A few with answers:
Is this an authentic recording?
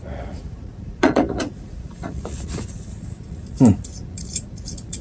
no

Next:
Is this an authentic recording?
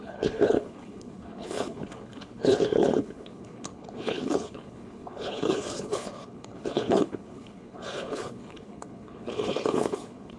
no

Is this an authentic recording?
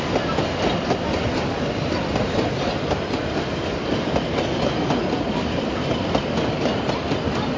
yes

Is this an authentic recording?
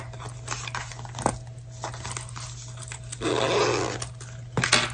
yes